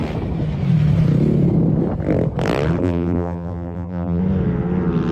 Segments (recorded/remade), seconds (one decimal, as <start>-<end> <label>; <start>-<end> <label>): 0.0-2.8 recorded; 2.8-4.2 remade; 4.2-5.1 recorded